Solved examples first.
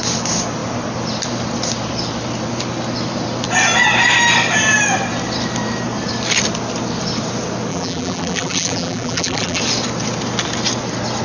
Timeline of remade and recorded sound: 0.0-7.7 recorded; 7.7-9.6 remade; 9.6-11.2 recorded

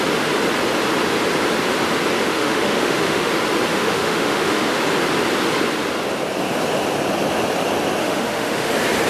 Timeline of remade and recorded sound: 0.0-2.2 recorded; 2.2-3.3 remade; 3.3-3.7 recorded; 3.7-4.7 remade; 4.7-8.0 recorded; 8.0-8.7 remade; 8.7-9.1 recorded

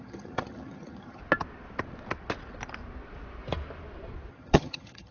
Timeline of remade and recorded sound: 0.0-1.2 remade; 1.2-4.3 recorded; 4.3-5.1 remade

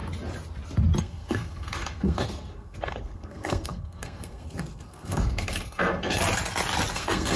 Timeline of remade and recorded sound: 0.0-1.0 recorded; 1.0-6.2 remade; 6.2-6.9 recorded; 6.9-7.4 remade